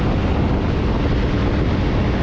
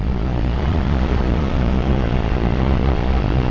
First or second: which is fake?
second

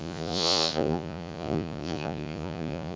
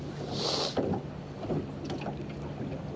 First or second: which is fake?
first